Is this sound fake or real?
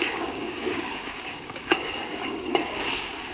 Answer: fake